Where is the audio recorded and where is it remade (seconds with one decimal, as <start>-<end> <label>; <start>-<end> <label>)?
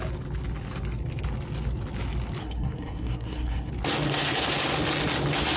0.0-2.4 recorded; 2.4-3.7 remade; 3.7-5.6 recorded